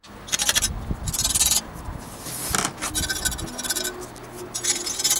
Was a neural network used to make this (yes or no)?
no